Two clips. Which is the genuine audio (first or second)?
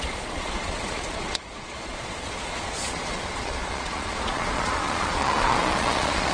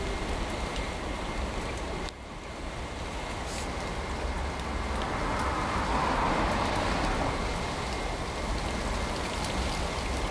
second